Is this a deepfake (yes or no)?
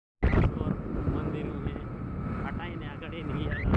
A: no